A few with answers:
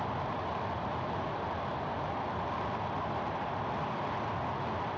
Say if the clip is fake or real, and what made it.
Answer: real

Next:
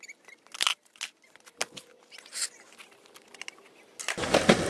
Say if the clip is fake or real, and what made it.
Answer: real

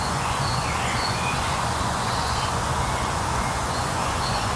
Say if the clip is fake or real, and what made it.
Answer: fake, vocoder, Vocos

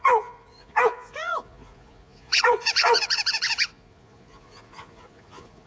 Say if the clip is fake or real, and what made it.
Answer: fake, vocoder, Vocos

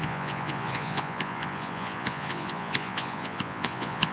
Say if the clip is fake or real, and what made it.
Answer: fake, vocoder, Vocos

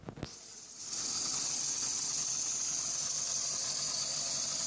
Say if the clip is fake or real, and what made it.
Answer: real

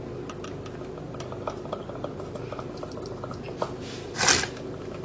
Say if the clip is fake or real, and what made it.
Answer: real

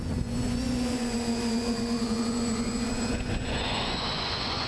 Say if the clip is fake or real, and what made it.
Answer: fake, vocoder, Vocos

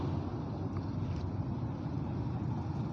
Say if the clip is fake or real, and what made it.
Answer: real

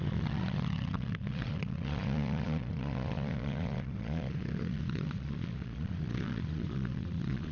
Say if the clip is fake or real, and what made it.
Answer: fake, vocoder, Vocos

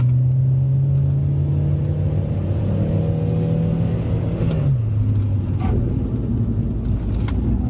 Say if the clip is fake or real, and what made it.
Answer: real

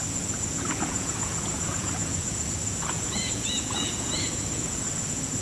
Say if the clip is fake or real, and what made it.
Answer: fake, vocoder, Vocos